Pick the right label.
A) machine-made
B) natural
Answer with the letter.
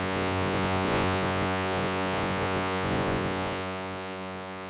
A